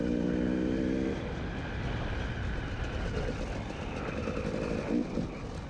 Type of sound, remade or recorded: recorded